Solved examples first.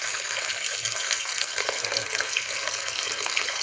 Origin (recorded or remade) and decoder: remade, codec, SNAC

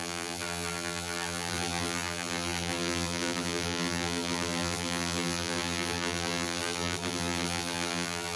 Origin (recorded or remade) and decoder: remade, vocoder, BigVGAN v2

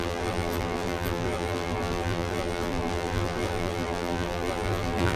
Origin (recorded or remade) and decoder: remade, vocoder, BigVGAN v2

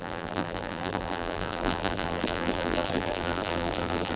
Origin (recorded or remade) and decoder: remade, vocoder, BigVGAN v2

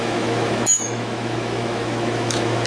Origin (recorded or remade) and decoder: remade, autoencoder, DAC-VAE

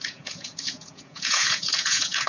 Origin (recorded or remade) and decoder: remade, vocoder, Vocos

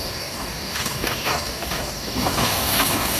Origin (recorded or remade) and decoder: remade, codec, DAC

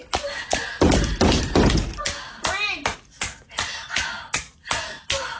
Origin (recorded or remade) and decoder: recorded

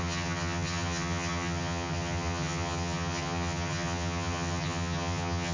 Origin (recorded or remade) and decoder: remade, vocoder, HiFi-GAN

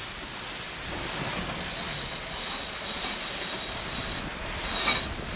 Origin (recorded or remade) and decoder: recorded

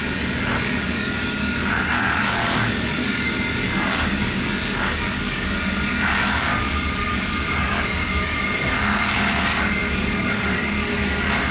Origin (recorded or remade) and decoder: remade, codec, DAC